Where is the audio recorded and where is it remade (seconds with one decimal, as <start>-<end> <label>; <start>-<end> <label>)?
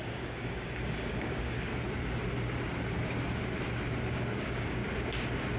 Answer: 0.0-1.7 remade; 1.7-4.1 recorded; 4.1-4.8 remade; 4.8-5.6 recorded